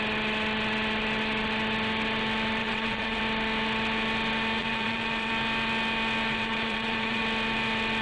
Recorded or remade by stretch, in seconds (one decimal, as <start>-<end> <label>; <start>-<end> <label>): 0.0-2.6 recorded; 2.6-3.2 remade; 3.2-4.6 recorded; 4.6-5.3 remade; 5.3-6.3 recorded; 6.3-7.2 remade; 7.2-8.0 recorded